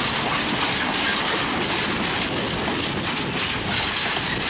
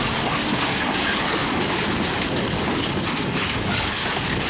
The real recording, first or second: first